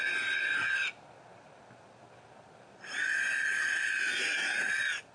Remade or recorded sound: recorded